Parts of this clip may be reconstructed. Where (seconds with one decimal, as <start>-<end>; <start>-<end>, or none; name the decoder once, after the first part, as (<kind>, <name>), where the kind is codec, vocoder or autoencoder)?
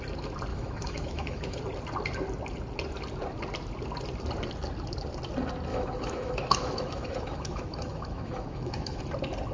0.5-1.6 (autoencoder, DAC-VAE); 5.7-9.0